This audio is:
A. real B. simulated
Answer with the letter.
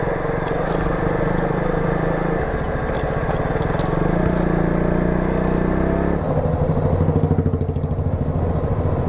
A